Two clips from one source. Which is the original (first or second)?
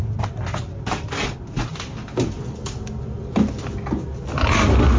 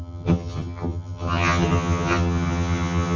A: first